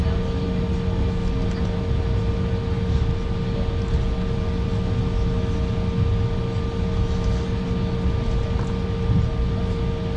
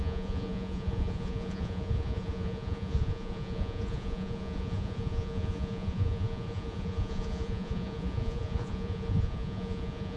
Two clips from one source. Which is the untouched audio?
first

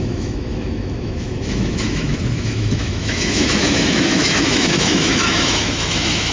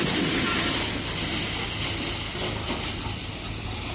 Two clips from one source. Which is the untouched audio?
second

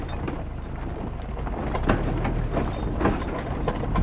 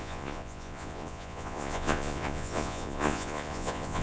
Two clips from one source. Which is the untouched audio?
first